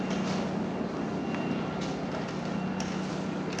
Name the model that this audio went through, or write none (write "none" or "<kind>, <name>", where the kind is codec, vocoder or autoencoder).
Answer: none